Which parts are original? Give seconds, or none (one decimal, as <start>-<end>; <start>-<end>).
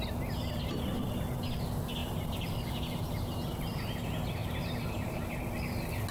0.0-2.0; 3.1-4.4; 5.4-6.1